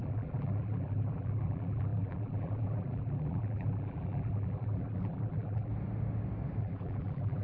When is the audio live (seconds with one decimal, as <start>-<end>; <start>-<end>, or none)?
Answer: 5.7-6.6